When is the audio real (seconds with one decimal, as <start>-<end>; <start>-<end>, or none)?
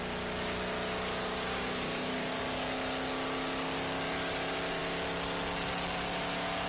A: 0.0-1.3; 2.4-6.7